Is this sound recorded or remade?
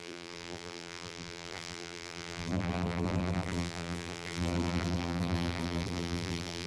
remade